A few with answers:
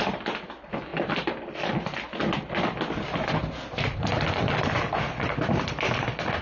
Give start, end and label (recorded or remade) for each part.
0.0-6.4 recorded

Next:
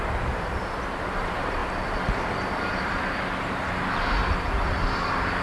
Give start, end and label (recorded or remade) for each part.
0.0-1.6 remade; 1.6-2.6 recorded; 2.6-5.4 remade

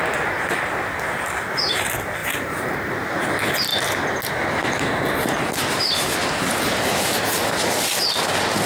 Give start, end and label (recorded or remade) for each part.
0.0-2.2 recorded; 2.2-2.9 remade; 2.9-8.7 recorded

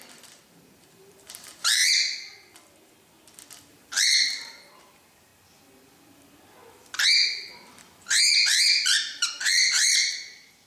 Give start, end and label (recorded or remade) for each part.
0.0-1.8 remade; 1.8-3.7 recorded; 3.7-5.3 remade; 5.3-7.3 recorded; 7.3-10.7 remade